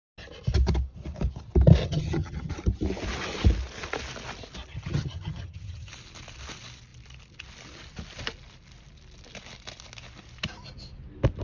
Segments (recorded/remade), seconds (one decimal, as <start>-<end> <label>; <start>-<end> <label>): 0.0-1.8 recorded; 1.8-2.5 remade; 2.5-4.7 recorded; 4.7-5.9 remade; 5.9-11.4 recorded